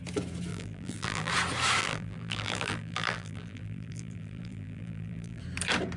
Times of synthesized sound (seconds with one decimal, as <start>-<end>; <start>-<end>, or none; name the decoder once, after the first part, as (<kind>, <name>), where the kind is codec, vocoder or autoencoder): 0.5-1.3 (vocoder, BigVGAN v2); 1.8-5.4